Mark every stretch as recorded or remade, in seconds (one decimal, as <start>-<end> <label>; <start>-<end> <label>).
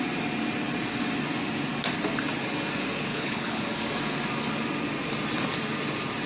0.0-3.1 recorded; 3.1-3.6 remade; 3.6-6.3 recorded